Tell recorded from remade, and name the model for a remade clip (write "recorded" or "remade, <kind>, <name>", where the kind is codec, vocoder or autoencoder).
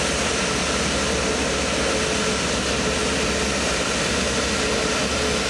recorded